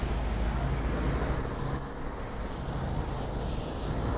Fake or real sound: real